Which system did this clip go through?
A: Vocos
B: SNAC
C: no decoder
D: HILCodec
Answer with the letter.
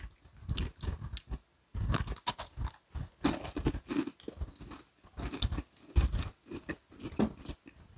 C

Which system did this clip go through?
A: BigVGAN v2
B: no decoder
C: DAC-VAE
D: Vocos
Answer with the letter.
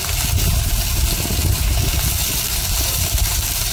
B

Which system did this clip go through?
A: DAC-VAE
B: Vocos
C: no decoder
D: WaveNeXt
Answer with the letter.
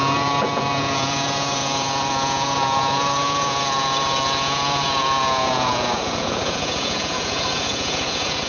B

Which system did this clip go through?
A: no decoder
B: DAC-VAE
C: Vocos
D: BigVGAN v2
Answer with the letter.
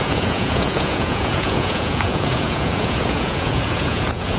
C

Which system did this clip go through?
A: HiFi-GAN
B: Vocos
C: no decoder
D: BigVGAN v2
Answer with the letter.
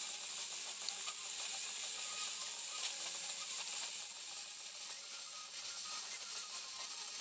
C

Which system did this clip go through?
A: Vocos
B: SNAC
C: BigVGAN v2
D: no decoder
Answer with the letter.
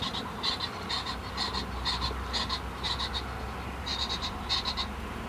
D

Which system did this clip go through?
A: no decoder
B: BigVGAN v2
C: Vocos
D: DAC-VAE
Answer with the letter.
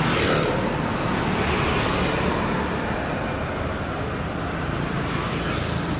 A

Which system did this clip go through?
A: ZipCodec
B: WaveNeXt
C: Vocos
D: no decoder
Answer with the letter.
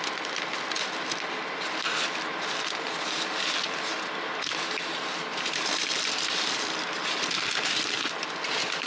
D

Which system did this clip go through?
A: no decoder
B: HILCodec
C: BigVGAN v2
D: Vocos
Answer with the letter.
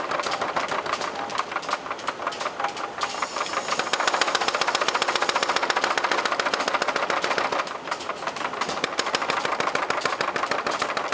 A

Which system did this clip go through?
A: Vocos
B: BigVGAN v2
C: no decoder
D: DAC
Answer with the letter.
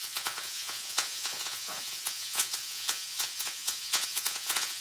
A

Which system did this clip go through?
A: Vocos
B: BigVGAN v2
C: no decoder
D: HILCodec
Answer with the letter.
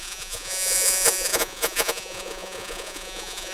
A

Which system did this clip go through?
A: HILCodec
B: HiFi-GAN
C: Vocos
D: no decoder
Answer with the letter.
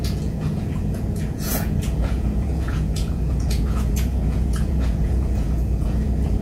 C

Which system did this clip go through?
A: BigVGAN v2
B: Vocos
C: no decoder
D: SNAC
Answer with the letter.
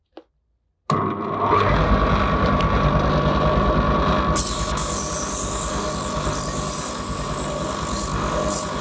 C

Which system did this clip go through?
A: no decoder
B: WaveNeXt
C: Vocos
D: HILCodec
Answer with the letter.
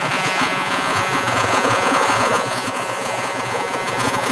C